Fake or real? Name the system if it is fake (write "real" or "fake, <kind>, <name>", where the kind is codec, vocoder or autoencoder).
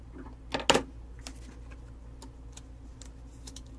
real